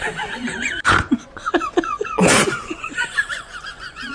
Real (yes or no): no